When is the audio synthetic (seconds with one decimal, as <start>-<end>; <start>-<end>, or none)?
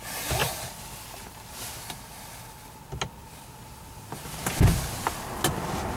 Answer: none